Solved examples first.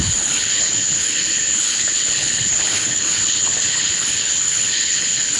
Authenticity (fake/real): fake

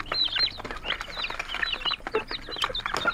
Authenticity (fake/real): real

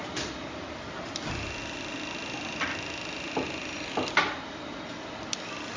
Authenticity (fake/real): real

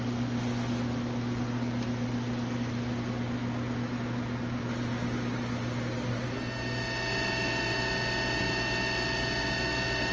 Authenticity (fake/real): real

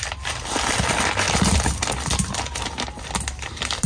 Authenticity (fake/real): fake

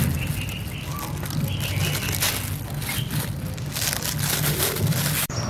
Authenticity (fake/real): real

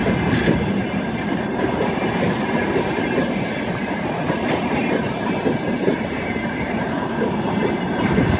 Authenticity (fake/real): fake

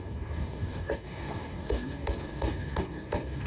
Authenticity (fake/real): fake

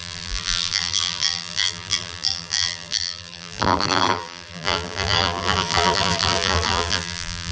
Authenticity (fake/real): fake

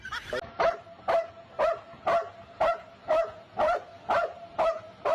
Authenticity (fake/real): real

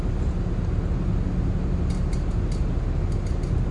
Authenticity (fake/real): real